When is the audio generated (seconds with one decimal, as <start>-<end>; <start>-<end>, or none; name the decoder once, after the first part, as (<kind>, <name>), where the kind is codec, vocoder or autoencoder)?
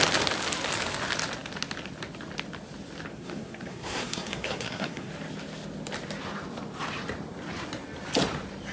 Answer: 3.1-5.1 (codec, SNAC)